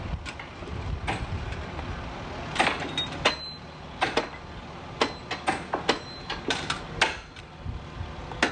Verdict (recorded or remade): recorded